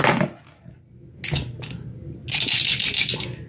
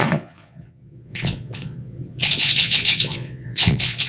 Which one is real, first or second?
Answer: first